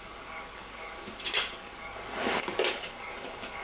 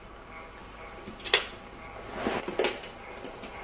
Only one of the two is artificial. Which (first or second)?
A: first